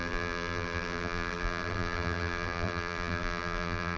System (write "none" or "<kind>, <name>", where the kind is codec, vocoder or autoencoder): vocoder, BigVGAN v2